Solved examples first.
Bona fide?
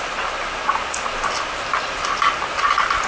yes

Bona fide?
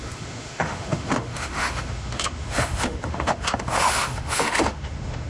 no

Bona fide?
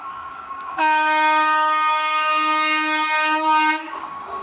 no